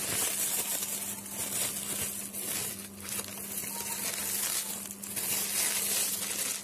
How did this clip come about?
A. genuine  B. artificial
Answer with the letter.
A